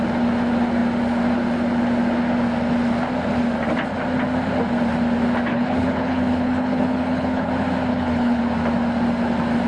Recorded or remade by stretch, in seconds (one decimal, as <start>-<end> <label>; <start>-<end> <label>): 0.0-5.5 recorded; 5.5-7.5 remade; 7.5-7.9 recorded; 7.9-8.4 remade; 8.4-9.7 recorded